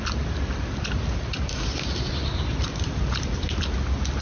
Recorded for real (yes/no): yes